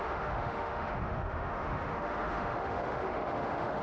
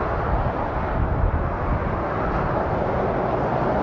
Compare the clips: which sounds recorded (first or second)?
second